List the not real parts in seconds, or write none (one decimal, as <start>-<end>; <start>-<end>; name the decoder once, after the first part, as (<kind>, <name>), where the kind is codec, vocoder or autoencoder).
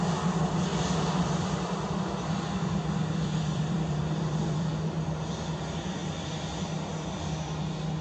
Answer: 0.7-5.5 (vocoder, BigVGAN v2); 6.0-6.9